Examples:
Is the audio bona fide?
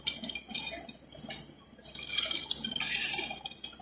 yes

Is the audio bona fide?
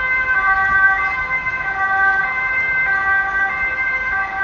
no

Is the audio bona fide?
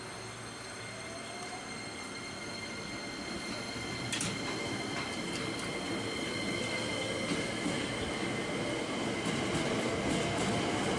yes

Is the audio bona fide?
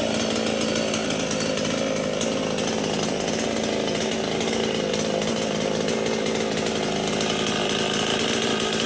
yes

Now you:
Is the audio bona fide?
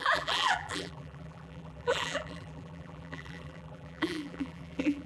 no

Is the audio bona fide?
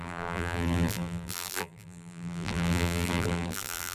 no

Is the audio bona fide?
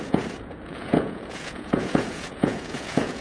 no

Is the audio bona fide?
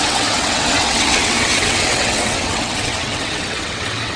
no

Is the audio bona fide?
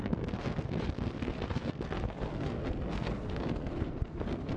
no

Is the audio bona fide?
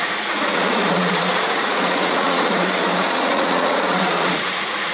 no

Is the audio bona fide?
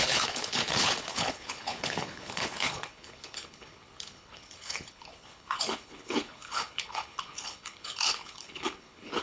no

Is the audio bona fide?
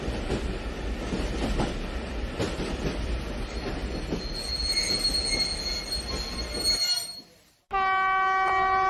yes